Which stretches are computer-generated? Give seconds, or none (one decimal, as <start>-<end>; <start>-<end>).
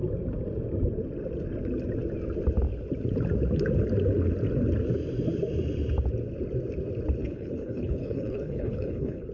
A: 7.2-9.3